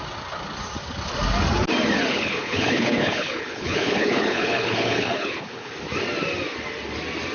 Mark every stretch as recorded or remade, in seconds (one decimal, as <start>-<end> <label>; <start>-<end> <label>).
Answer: 0.0-2.1 recorded; 2.1-5.7 remade; 5.7-7.3 recorded